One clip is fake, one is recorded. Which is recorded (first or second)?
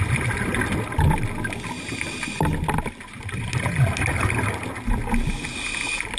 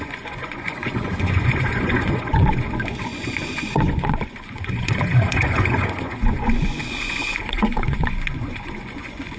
first